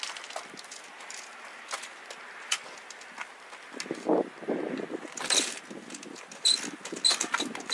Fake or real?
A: real